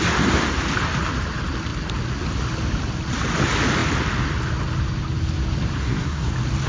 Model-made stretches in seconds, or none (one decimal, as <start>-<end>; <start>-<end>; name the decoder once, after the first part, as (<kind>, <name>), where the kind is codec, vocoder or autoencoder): 5.8-6.3 (codec, SNAC)